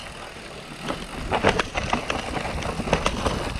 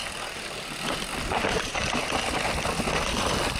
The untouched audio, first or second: first